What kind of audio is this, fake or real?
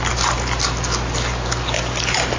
real